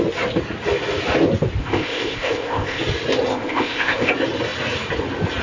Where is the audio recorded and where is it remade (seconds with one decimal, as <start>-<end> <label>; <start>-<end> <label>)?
0.0-1.6 recorded; 1.6-2.8 remade; 2.8-3.3 recorded; 3.3-4.1 remade; 4.1-5.4 recorded